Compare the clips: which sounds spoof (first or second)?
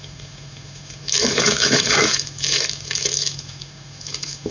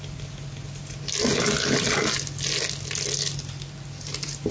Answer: first